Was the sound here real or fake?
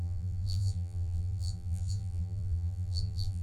fake